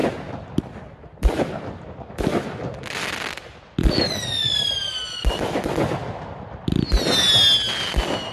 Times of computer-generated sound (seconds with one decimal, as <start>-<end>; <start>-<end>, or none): none